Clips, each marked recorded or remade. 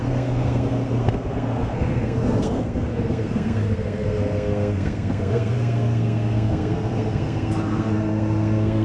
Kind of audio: remade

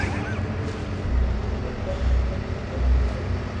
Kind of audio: recorded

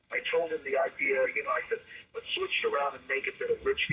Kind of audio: remade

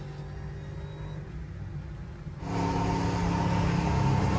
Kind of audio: recorded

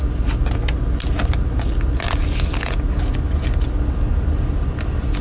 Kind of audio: recorded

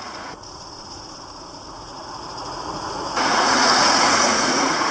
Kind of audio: remade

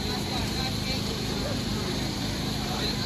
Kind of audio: remade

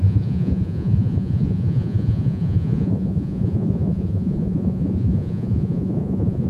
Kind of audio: remade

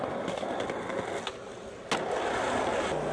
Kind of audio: recorded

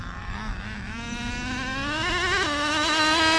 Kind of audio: recorded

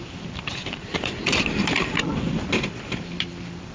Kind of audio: remade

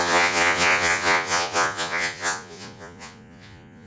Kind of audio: remade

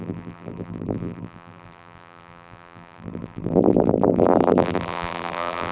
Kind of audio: remade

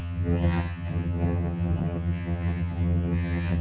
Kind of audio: remade